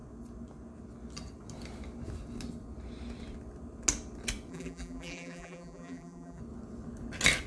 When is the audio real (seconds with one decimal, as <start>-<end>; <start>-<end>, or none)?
0.0-4.5; 6.4-7.5

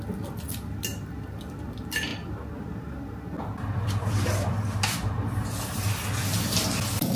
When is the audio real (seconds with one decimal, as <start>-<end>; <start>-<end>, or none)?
none

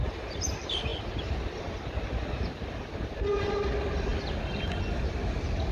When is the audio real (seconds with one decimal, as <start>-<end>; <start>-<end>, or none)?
0.0-4.1; 4.8-5.7

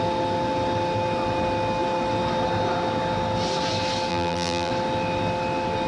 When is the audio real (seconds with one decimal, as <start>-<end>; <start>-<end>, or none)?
0.0-4.1; 4.7-5.9

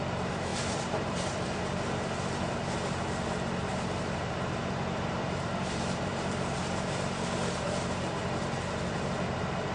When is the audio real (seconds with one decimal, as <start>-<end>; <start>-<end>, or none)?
8.2-8.7

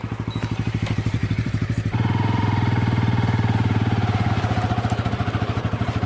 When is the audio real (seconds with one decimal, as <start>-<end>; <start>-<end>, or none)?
0.0-0.7

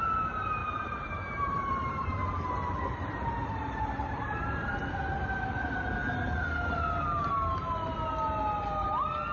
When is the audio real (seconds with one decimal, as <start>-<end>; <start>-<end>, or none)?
0.0-0.6; 4.9-6.0; 7.3-9.3

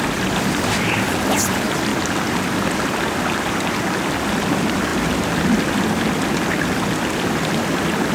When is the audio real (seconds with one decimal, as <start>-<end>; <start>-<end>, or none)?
0.0-8.1